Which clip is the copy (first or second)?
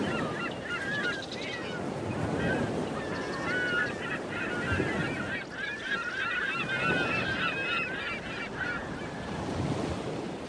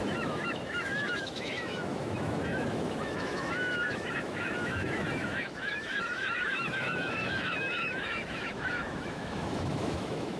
second